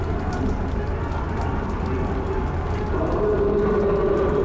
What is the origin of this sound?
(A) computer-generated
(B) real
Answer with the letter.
B